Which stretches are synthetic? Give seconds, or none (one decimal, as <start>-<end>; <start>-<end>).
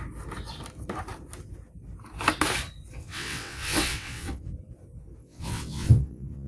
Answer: 3.0-4.4; 5.2-6.5